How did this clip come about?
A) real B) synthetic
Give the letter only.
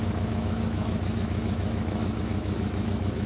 B